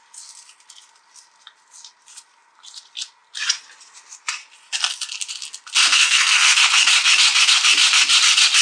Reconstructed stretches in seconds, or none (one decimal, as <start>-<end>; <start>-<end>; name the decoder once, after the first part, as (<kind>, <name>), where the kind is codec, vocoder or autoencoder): 5.9-6.6 (codec, SNAC)